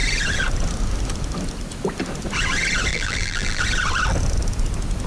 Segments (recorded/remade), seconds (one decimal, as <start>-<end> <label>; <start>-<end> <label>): 0.0-2.9 recorded; 2.9-3.6 remade; 3.6-5.1 recorded